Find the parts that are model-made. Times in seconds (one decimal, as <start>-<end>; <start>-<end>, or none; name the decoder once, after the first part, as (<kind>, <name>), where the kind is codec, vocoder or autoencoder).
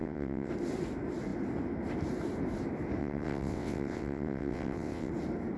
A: 0.0-0.5 (vocoder, WaveNeXt); 3.0-5.1